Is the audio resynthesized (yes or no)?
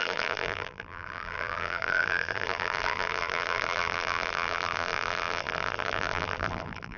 yes